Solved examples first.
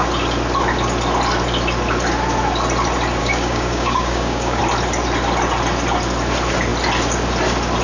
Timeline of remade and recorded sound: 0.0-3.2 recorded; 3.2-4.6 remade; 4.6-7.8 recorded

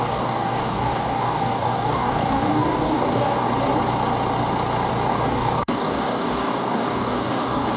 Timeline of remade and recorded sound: 0.0-3.5 remade; 3.5-5.1 recorded; 5.1-7.8 remade

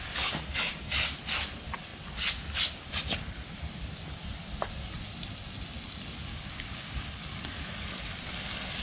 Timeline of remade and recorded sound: 0.0-6.3 recorded; 6.3-7.1 remade; 7.1-8.8 recorded

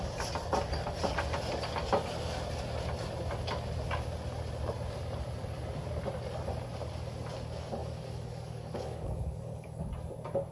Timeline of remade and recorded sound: 0.0-7.8 recorded; 7.8-9.9 remade; 9.9-10.5 recorded

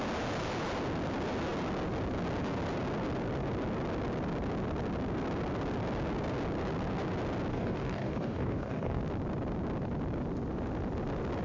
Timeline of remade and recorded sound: 0.0-7.5 recorded; 7.5-9.0 remade; 9.0-11.4 recorded

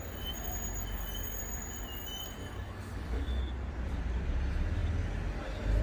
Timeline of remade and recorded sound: 0.0-2.4 recorded; 2.4-3.4 remade; 3.4-5.8 recorded

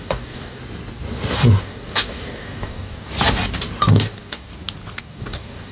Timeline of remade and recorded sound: 0.0-0.6 remade; 0.6-1.6 recorded; 1.6-3.1 remade; 3.1-3.9 recorded; 3.9-4.5 remade; 4.5-5.0 recorded; 5.0-5.7 remade

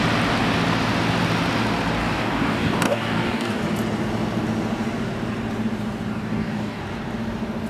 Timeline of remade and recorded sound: 0.0-2.0 recorded; 2.0-3.6 remade; 3.6-6.1 recorded; 6.1-6.8 remade; 6.8-7.7 recorded